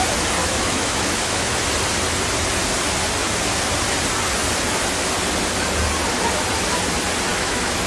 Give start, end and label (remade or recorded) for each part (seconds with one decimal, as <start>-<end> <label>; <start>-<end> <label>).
0.0-0.4 recorded; 0.4-1.6 remade; 1.6-7.3 recorded; 7.3-7.9 remade